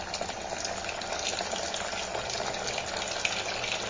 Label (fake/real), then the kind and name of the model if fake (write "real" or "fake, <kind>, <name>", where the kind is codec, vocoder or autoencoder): real